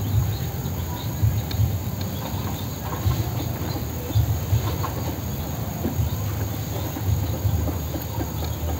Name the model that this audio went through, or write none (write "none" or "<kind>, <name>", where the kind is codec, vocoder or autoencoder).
none